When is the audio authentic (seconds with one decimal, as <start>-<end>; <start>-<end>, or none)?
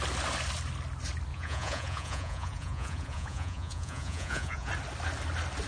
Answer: 0.0-1.3; 4.7-5.7